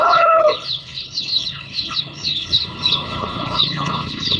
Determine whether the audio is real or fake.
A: fake